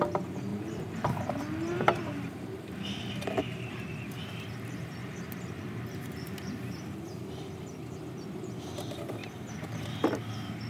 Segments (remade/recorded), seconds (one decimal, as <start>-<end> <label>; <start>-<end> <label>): 0.0-0.5 recorded; 0.5-1.3 remade; 1.3-5.0 recorded; 5.0-6.8 remade; 6.8-9.2 recorded; 9.2-10.0 remade; 10.0-10.7 recorded